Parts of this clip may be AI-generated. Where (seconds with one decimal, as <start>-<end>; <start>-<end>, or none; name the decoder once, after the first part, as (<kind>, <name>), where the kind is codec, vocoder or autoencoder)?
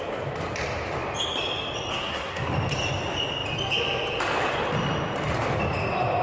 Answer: 1.9-2.5 (codec, SNAC)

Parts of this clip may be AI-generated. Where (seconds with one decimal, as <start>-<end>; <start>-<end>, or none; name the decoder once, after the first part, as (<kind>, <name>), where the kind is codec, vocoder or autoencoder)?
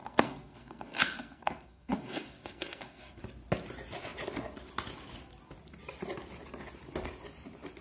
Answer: 0.0-3.2 (codec, SNAC)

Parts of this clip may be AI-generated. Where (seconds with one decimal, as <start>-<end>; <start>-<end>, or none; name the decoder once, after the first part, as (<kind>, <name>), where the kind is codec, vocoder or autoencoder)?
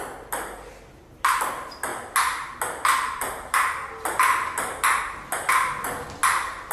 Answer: none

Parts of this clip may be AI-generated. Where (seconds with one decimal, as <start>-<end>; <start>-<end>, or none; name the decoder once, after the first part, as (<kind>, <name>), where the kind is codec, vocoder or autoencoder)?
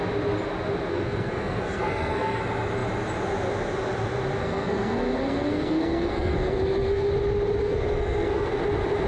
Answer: 0.9-2.4 (codec, SNAC); 4.4-7.1; 7.6-8.5